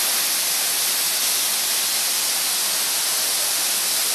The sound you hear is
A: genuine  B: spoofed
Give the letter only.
A